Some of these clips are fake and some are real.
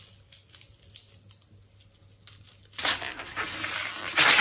real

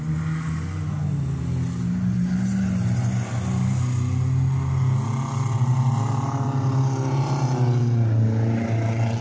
real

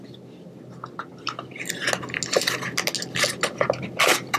real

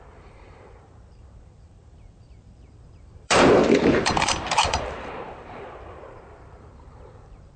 fake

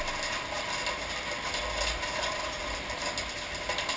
real